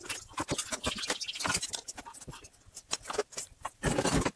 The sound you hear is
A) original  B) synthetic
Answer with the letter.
A